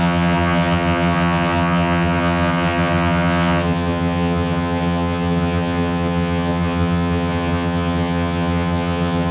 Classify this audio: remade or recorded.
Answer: remade